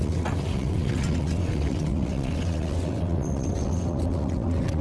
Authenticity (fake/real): fake